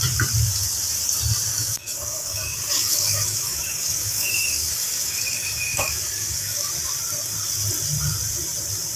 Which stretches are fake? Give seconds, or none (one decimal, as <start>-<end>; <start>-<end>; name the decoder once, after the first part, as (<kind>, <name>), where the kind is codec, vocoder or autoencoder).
1.5-6.7 (codec, DAC)